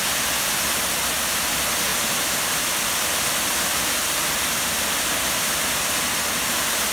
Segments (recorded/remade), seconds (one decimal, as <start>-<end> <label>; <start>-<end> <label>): 0.0-1.9 recorded; 1.9-6.0 remade; 6.0-6.9 recorded